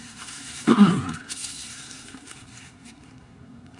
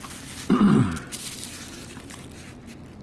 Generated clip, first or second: first